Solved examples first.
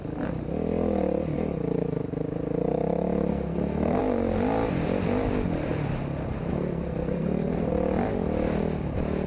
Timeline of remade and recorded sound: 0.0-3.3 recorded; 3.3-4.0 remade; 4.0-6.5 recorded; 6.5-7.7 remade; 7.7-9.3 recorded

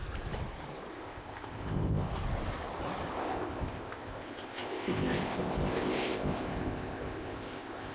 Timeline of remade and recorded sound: 0.0-0.9 recorded; 0.9-2.1 remade; 2.1-3.1 recorded; 3.1-7.9 remade

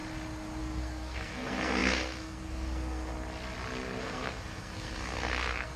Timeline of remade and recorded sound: 0.0-0.6 recorded; 0.6-3.1 remade; 3.1-4.0 recorded; 4.0-5.8 remade

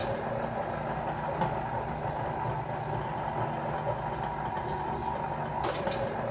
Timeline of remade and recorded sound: 0.0-6.3 recorded

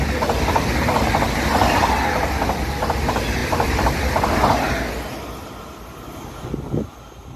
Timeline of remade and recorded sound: 0.0-3.4 recorded; 3.4-3.9 remade; 3.9-7.4 recorded

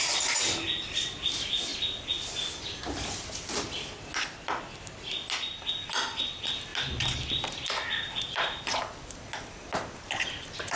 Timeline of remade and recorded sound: 0.0-10.8 recorded

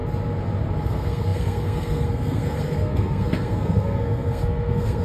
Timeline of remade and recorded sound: 0.0-0.8 recorded; 0.8-5.0 remade

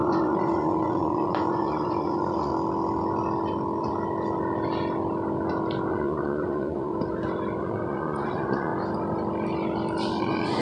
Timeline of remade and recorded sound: 0.0-2.5 remade; 2.5-5.9 recorded; 5.9-6.9 remade; 6.9-7.6 recorded; 7.6-8.7 remade; 8.7-10.2 recorded; 10.2-10.6 remade